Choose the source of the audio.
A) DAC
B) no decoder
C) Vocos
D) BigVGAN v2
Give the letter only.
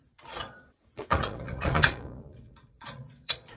C